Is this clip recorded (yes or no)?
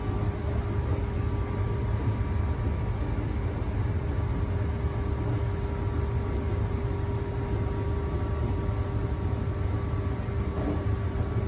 yes